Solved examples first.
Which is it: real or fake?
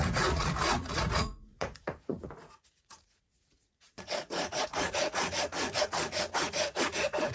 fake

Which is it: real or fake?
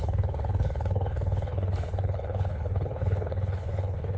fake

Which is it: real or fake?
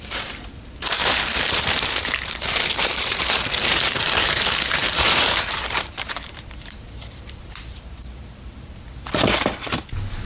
fake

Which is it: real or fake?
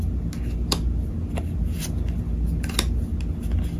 real